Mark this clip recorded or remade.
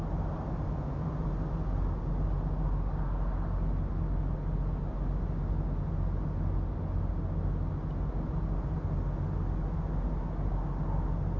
recorded